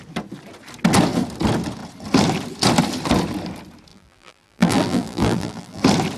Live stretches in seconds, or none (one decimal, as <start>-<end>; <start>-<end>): 0.0-3.9; 5.8-6.2